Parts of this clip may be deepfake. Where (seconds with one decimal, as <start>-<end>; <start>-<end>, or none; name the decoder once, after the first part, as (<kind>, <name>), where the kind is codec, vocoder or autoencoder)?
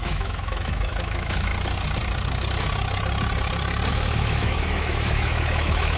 0.0-1.5 (autoencoder, DAC-VAE); 3.9-6.0